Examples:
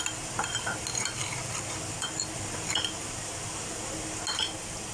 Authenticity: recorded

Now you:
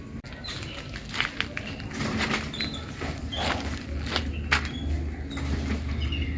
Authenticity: recorded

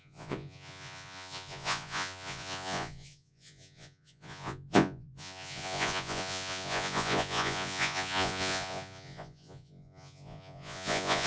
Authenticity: remade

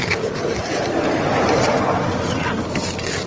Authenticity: recorded